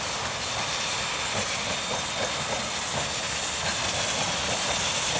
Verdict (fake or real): real